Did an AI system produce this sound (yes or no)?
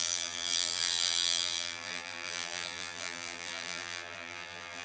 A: yes